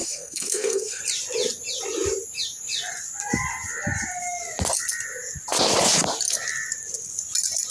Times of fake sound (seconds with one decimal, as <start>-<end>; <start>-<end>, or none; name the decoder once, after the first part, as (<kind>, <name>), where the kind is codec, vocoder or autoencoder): 0.0-1.0 (codec, SNAC)